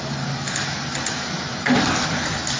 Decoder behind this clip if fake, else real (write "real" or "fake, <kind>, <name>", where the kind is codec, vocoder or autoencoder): real